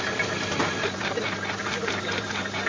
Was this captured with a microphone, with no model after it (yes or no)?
no